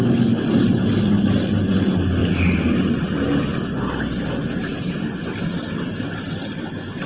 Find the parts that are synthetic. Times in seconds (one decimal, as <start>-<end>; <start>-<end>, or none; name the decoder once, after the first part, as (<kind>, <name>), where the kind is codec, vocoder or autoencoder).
2.2-3.4 (vocoder, BigVGAN v2); 4.7-6.5

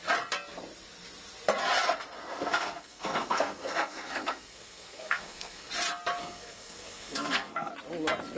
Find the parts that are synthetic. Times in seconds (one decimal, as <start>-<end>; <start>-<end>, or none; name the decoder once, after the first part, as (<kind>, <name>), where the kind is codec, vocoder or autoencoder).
2.2-5.7 (codec, SNAC); 6.2-7.7

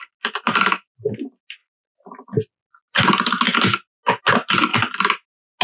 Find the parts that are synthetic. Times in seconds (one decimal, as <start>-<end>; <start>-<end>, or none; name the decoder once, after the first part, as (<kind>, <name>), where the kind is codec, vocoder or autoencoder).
none

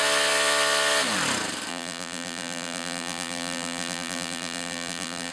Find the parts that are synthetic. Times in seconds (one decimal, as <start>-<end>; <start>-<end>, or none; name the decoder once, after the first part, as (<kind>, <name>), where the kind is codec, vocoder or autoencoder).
1.7-5.3 (vocoder, BigVGAN v2)

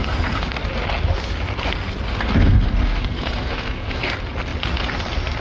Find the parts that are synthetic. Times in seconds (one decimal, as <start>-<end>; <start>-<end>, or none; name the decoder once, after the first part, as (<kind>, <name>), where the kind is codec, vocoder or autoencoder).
0.0-0.6 (codec, SNAC); 2.1-4.0

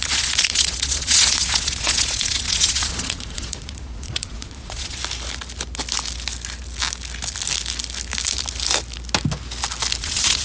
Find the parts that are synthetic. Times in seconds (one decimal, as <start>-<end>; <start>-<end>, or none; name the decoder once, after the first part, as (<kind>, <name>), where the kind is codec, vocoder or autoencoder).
0.0-5.0 (vocoder, Vocos); 10.0-10.4

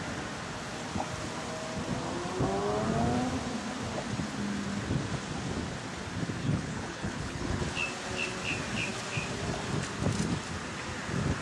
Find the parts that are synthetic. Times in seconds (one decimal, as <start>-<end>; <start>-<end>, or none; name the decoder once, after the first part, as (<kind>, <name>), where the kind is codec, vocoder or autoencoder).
6.4-7.6 (codec, HILCodec)